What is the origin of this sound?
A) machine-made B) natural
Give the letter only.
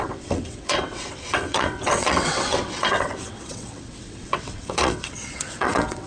A